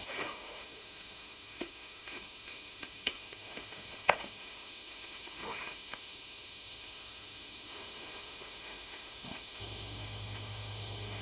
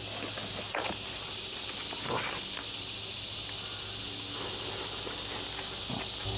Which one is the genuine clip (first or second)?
second